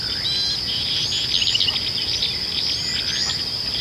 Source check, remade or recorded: recorded